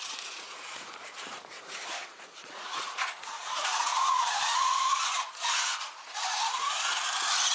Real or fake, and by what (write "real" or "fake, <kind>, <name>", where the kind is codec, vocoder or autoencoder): fake, vocoder, Vocos